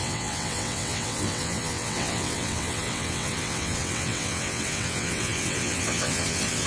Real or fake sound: fake